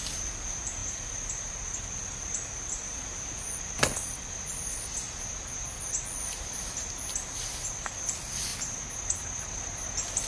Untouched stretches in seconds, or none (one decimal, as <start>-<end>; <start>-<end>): 0.0-10.3